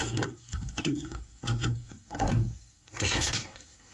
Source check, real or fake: fake